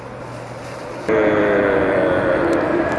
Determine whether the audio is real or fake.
real